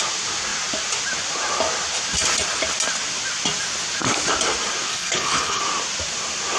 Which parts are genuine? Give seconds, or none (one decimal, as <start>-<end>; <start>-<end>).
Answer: 0.0-4.9; 5.6-6.6